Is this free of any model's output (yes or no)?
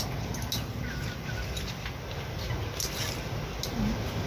yes